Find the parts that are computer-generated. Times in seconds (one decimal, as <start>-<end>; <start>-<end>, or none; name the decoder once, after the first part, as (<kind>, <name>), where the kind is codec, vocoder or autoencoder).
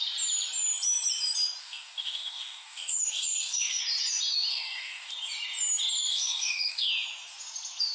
1.6-3.8 (codec, DAC); 4.5-5.1; 6.1-6.9